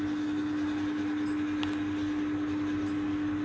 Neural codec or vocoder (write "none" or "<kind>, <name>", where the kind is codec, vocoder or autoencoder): none